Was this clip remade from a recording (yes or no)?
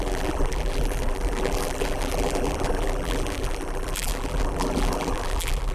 yes